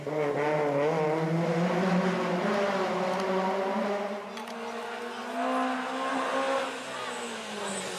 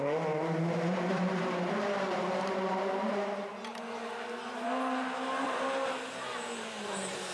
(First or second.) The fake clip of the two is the second